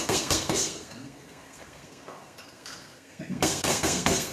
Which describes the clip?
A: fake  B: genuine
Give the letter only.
A